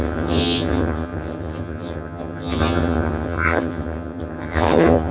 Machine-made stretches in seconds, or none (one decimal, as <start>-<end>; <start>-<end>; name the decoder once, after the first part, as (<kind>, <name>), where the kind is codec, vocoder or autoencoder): 0.0-5.1 (vocoder, HiFi-GAN)